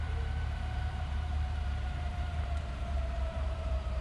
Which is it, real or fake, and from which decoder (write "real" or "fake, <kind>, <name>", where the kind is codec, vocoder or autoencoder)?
fake, vocoder, BigVGAN v2